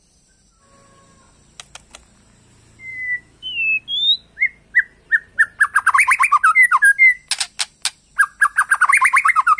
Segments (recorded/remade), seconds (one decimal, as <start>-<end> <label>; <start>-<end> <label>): 0.0-2.9 recorded; 2.9-3.8 remade; 3.8-9.6 recorded